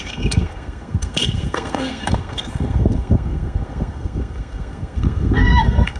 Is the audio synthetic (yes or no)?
yes